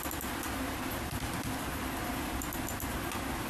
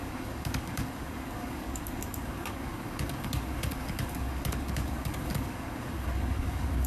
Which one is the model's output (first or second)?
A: second